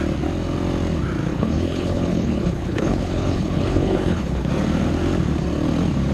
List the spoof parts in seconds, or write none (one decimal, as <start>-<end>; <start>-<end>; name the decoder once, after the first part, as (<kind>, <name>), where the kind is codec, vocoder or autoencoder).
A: 1.3-4.5 (codec, HILCodec)